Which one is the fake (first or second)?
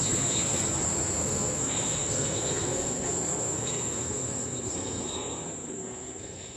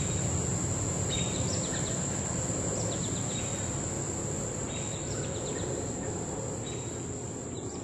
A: first